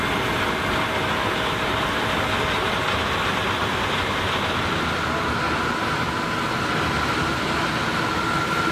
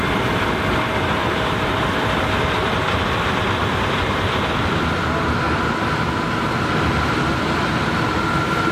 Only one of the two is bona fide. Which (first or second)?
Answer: first